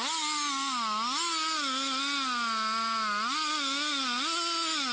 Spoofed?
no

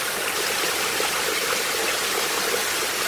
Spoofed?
no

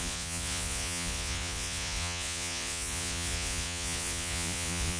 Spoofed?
yes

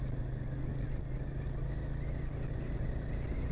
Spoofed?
no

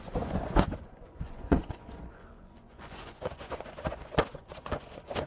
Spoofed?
yes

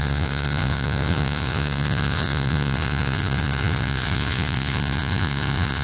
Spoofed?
yes